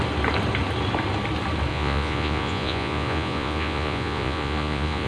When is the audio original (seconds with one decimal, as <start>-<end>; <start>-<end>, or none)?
0.0-1.7